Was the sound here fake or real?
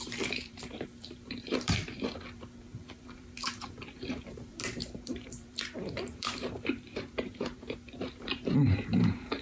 fake